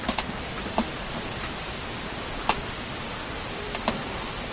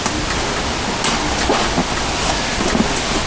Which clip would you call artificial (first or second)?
first